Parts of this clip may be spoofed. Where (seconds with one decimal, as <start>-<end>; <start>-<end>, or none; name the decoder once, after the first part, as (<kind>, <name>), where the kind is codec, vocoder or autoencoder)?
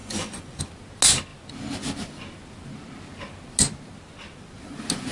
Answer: 0.0-0.6 (vocoder, Vocos)